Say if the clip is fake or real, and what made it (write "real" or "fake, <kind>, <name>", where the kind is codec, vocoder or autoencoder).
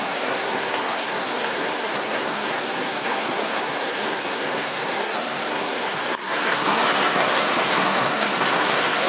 fake, codec, SNAC